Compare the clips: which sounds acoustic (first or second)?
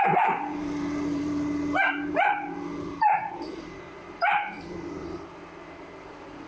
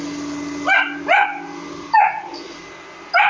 second